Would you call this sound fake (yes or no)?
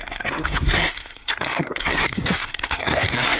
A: yes